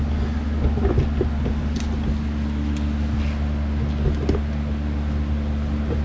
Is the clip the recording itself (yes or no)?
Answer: yes